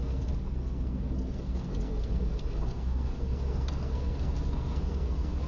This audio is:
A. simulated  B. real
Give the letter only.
A